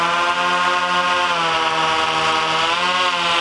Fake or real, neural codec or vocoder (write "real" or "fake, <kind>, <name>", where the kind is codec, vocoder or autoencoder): real